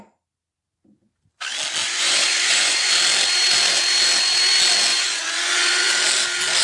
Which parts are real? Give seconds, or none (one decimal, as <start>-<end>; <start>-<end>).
0.0-1.8; 2.9-4.9; 5.9-6.6